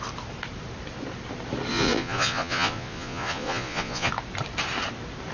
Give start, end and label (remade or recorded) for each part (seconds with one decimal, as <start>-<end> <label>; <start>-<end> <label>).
0.0-1.7 recorded; 1.7-4.1 remade; 4.1-5.3 recorded